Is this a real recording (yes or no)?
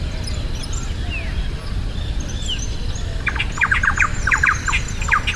yes